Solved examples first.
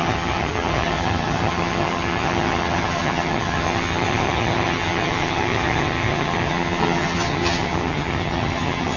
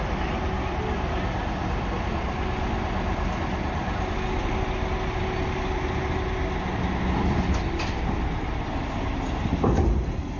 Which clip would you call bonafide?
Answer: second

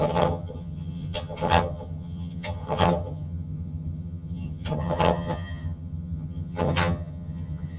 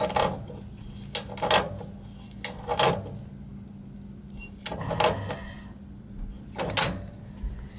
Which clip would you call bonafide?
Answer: second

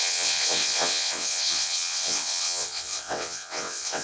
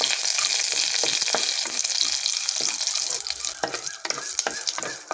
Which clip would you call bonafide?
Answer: second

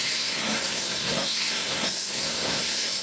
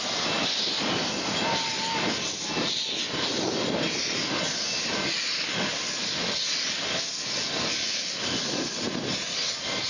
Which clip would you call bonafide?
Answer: second